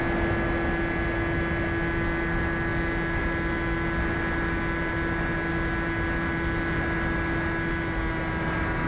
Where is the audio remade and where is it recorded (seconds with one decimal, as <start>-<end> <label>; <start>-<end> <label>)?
0.0-8.9 recorded